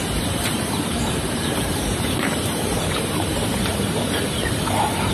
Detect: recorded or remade remade